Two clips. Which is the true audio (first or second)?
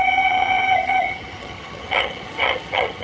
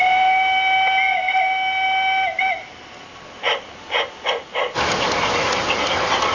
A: second